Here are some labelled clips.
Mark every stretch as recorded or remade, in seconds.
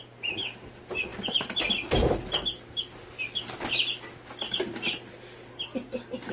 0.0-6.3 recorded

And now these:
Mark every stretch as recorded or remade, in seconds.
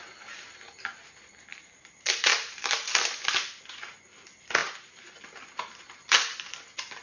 0.0-1.5 recorded; 1.5-3.9 remade; 3.9-4.6 recorded; 4.6-5.2 remade; 5.2-7.0 recorded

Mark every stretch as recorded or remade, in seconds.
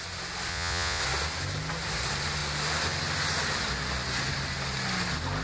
0.0-0.5 recorded; 0.5-1.0 remade; 1.0-5.4 recorded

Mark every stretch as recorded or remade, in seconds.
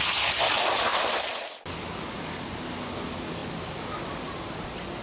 0.0-5.0 recorded